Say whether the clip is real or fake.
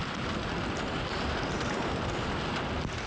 real